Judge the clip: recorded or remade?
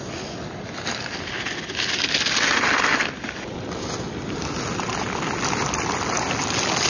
recorded